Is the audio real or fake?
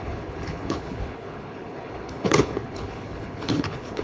fake